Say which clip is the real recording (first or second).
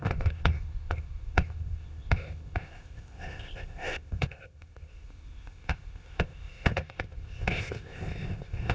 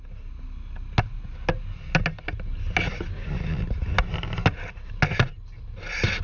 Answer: second